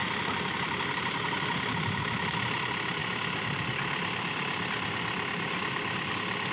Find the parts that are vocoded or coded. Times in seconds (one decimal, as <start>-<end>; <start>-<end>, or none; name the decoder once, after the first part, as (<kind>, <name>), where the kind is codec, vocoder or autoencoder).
0.0-2.0 (vocoder, BigVGAN v2); 3.0-6.1